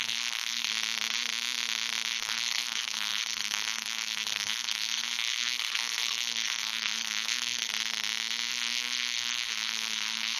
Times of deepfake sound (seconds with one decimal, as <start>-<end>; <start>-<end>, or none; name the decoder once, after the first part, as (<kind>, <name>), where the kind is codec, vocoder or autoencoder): 0.0-0.7 (codec, SNAC); 2.1-7.7; 8.5-10.4

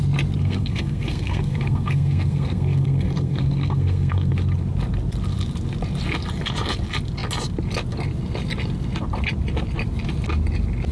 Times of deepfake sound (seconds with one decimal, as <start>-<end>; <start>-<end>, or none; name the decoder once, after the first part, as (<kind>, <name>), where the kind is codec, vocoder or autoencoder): 0.4-4.3 (codec, SNAC)

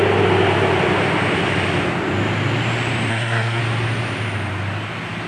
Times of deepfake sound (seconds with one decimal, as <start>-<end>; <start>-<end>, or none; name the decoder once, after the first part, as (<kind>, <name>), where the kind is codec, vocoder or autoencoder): 3.1-3.6 (codec, SNAC)

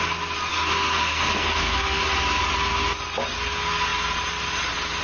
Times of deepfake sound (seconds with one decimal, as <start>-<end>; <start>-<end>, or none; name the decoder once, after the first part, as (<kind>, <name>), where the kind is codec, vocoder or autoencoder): 0.5-2.0 (codec, SNAC)

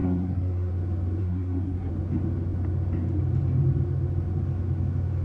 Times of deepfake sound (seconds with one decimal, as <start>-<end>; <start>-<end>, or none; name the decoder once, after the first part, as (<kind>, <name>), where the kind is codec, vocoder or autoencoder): 0.0-0.7 (codec, SNAC); 1.2-1.9